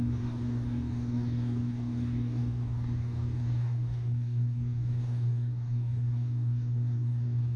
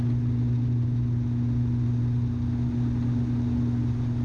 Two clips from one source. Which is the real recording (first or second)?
second